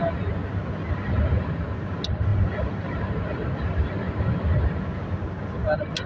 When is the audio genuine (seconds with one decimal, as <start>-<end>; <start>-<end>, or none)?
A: 0.0-6.1